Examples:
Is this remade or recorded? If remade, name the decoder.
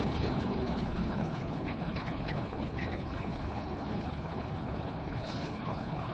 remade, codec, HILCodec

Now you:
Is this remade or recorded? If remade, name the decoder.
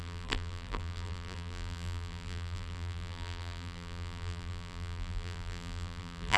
remade, vocoder, BigVGAN v2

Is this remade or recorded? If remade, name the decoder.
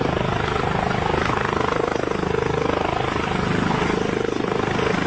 recorded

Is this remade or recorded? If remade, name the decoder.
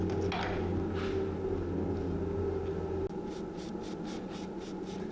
recorded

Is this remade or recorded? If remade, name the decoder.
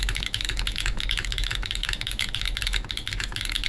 remade, autoencoder, DAC-VAE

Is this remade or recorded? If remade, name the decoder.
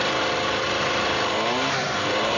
recorded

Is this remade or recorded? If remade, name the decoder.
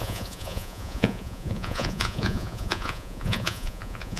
remade, vocoder, Vocos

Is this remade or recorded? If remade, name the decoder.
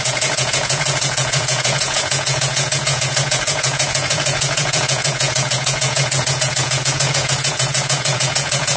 remade, vocoder, Vocos